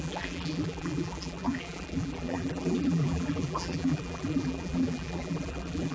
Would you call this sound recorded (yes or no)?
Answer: no